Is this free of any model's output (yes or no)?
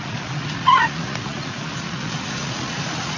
no